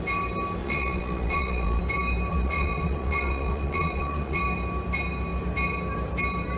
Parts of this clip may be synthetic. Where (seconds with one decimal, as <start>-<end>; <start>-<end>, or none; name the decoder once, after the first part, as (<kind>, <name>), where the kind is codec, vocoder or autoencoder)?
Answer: 0.6-1.8 (vocoder, Vocos); 2.3-4.4